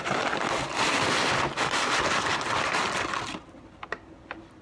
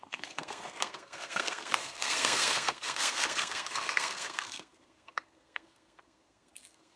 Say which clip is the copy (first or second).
second